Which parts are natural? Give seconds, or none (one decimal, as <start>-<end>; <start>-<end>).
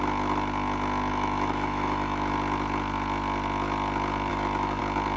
0.0-1.1; 2.3-4.3; 4.8-5.2